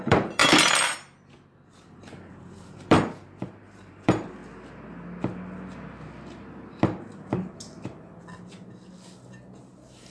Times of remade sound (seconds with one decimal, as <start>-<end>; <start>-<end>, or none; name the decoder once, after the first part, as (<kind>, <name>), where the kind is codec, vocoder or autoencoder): 0.0-0.4 (vocoder, BigVGAN v2); 1.7-4.4; 9.6-10.1